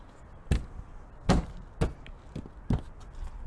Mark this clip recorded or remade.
recorded